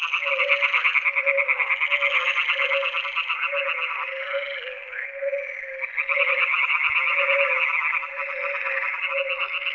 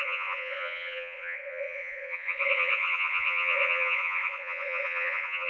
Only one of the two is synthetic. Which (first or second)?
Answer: second